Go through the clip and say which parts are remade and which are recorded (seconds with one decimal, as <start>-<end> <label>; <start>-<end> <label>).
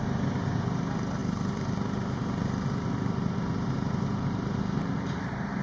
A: 0.0-5.6 remade